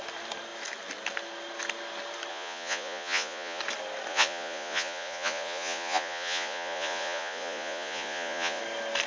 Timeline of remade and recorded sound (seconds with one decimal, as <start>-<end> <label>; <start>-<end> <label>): 0.0-2.3 recorded; 2.3-3.6 remade; 3.6-4.1 recorded; 4.1-8.6 remade; 8.6-9.1 recorded